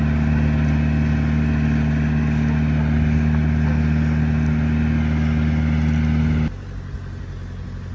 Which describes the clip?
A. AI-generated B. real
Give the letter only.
B